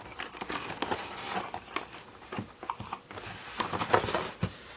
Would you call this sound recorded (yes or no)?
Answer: yes